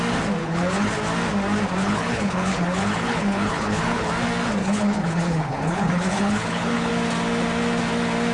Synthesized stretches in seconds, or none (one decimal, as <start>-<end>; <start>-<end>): 0.4-0.9; 1.8-4.1; 4.6-6.9